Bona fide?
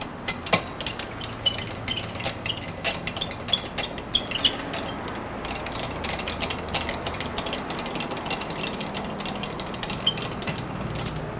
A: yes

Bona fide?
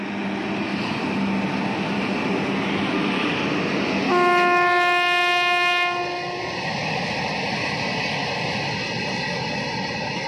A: yes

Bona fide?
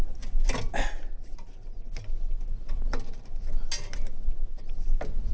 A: yes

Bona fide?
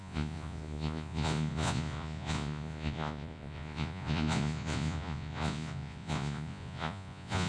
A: no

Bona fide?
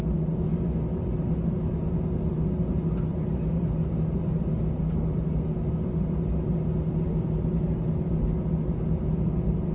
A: yes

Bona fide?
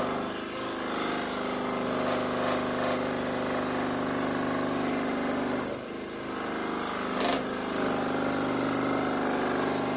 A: yes